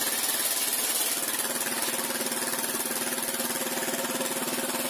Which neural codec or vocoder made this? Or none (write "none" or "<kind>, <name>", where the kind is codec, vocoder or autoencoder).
none